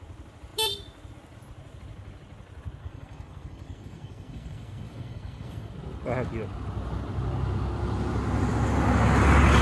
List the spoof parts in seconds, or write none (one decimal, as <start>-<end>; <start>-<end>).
2.8-5.7